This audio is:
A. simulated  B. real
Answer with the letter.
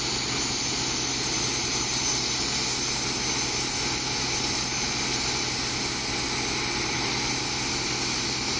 B